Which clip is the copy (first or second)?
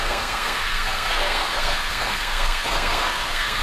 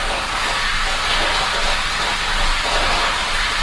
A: first